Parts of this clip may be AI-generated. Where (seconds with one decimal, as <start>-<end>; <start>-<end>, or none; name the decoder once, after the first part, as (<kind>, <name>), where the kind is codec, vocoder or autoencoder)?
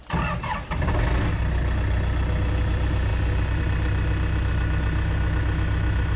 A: none